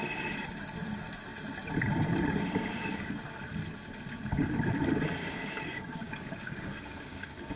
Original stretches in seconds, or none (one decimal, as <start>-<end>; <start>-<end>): 0.0-5.2